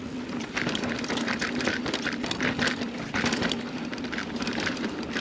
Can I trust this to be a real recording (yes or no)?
no